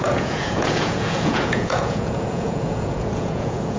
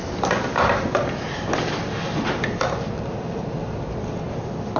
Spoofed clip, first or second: first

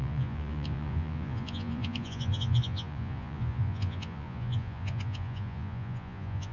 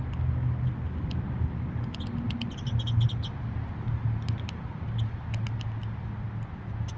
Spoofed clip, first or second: first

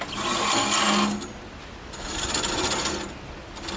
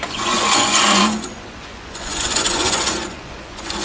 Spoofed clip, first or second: second